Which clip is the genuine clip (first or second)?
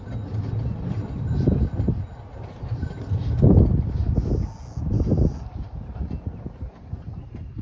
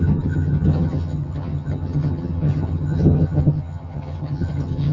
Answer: first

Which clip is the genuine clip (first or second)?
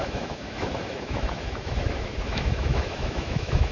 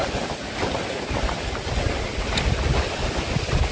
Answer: second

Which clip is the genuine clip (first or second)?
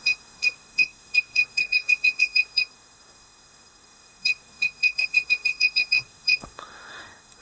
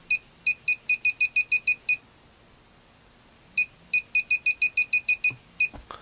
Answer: second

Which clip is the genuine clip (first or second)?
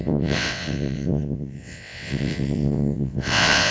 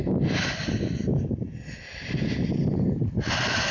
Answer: second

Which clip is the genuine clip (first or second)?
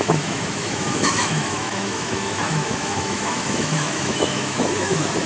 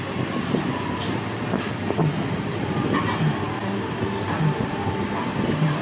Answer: second